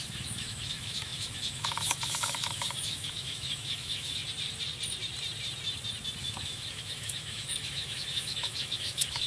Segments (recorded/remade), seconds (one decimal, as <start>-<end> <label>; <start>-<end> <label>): 0.0-4.2 remade; 4.2-6.2 recorded; 6.2-9.3 remade